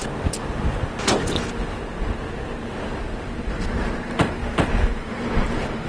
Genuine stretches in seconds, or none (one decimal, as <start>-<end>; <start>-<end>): 0.0-3.5; 4.4-4.9